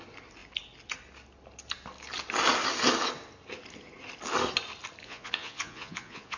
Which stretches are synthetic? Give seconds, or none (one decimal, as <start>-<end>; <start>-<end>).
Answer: 5.0-6.4